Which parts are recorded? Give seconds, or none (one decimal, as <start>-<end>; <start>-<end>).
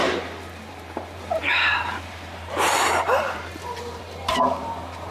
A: none